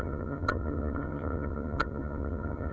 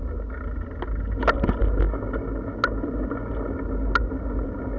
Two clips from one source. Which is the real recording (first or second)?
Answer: second